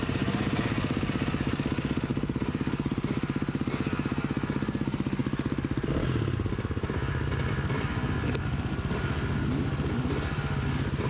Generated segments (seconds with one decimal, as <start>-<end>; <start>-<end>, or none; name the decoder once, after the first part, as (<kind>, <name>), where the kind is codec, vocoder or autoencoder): none